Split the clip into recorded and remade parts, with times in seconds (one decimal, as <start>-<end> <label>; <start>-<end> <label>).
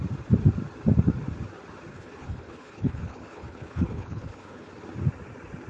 0.0-1.9 recorded; 1.9-4.7 remade; 4.7-5.7 recorded